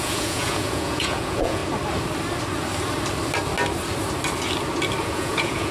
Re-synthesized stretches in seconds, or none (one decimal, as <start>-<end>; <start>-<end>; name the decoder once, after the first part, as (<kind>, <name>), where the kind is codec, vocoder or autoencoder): 0.0-1.6 (vocoder, Vocos); 5.0-5.7